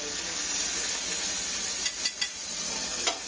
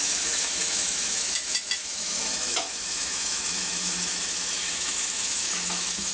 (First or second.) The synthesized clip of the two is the second